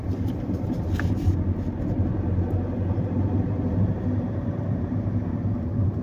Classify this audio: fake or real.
real